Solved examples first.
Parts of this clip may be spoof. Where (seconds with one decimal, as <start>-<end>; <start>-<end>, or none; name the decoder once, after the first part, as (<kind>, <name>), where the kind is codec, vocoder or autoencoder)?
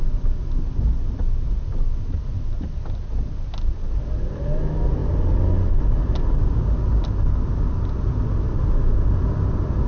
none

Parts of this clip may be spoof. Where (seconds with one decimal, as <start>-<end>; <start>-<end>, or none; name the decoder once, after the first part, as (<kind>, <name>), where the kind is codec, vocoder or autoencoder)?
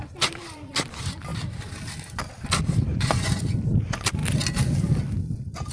2.9-3.4 (vocoder, Vocos)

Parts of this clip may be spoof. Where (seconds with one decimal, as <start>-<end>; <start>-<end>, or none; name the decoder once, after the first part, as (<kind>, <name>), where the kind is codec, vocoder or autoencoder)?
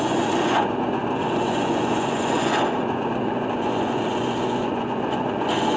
0.0-5.8 (vocoder, Vocos)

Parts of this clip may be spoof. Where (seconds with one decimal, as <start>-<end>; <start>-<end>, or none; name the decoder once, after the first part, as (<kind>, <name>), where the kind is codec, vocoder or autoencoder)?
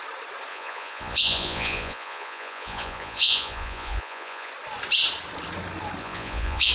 0.5-4.5 (vocoder, Vocos); 6.0-6.7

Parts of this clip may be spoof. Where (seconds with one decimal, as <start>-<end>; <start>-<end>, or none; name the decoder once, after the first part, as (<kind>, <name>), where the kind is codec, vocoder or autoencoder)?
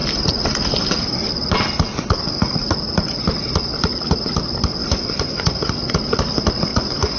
4.8-5.7 (vocoder, Vocos); 6.7-7.2